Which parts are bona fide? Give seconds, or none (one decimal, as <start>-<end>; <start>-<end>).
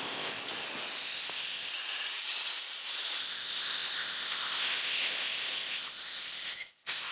0.4-1.0; 1.7-3.2